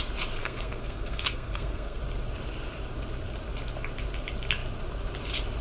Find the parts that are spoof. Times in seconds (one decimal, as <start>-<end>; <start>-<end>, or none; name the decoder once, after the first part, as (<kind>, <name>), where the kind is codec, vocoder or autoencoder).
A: 0.4-2.0 (codec, SNAC)